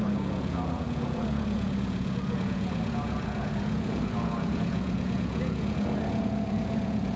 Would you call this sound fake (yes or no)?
yes